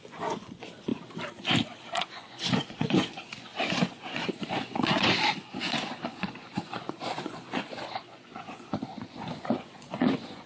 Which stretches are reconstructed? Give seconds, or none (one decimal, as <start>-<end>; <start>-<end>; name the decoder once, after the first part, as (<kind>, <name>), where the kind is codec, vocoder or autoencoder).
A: 0.0-0.9 (vocoder, Vocos); 1.9-10.5